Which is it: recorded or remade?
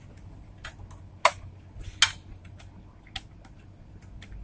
recorded